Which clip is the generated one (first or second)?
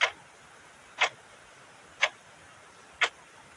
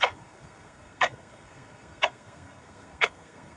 second